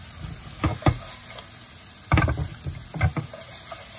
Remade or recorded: recorded